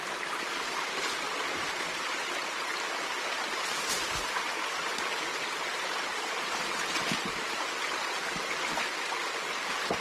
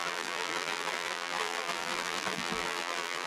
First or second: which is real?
first